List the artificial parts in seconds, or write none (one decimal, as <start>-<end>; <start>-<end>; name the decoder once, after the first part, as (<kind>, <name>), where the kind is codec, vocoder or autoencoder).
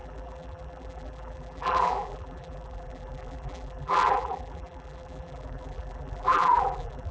0.0-7.1 (vocoder, BigVGAN v2)